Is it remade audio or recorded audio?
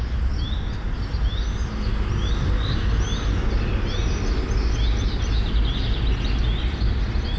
recorded